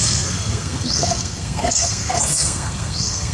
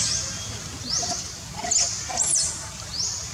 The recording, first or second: second